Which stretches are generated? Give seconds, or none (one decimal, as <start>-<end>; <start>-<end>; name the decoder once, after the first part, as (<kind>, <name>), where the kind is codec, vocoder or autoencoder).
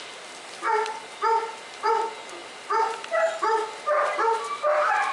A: none